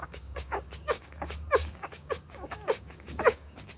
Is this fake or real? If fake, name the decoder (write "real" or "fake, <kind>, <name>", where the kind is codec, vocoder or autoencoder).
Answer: fake, codec, DAC